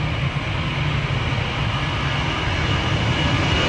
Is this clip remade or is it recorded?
recorded